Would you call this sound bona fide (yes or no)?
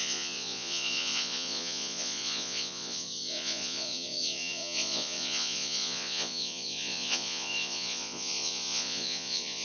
no